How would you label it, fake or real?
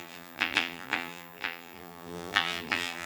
fake